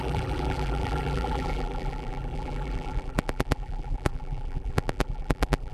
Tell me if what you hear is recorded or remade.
remade